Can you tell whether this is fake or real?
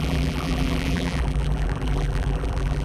fake